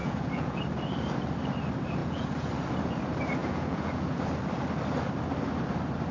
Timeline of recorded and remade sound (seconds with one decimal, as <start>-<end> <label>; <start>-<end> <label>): 0.0-0.6 remade; 0.6-2.0 recorded; 2.0-2.5 remade; 2.5-3.4 recorded; 3.4-4.2 remade; 4.2-6.1 recorded